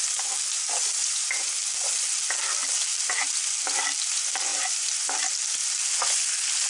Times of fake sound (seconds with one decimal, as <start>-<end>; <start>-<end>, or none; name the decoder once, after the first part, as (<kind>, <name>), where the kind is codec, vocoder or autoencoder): 2.9-3.4 (vocoder, BigVGAN v2); 4.5-5.1; 5.6-6.2